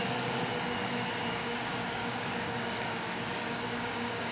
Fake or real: fake